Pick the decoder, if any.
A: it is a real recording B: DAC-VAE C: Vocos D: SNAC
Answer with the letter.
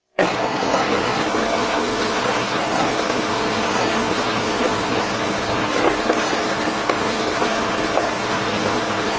D